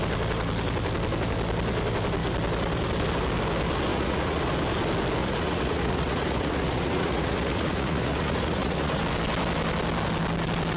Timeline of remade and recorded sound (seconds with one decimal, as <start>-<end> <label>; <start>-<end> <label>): 0.0-3.9 recorded; 3.9-4.4 remade; 4.4-5.2 recorded; 5.2-9.0 remade; 9.0-10.8 recorded